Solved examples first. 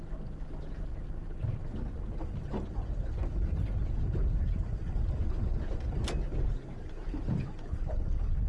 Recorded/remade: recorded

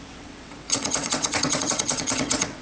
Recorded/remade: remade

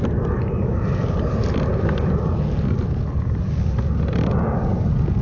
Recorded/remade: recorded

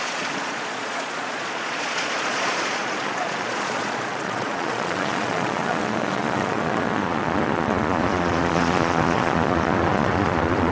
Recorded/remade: remade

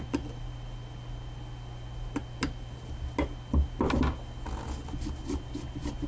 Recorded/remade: recorded